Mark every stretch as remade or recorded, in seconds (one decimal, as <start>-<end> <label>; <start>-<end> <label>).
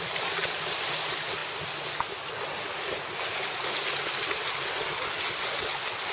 0.0-6.1 recorded